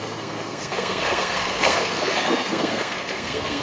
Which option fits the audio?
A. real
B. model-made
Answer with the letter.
B